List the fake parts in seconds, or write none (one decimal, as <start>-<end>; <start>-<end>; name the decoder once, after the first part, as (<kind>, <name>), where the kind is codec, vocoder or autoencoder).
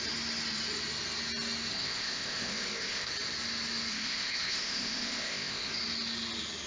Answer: 1.7-3.1 (codec, ZipCodec); 3.9-5.7